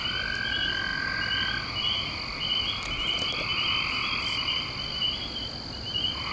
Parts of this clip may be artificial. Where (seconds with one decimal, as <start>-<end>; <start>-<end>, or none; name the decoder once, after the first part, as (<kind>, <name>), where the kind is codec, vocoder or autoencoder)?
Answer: none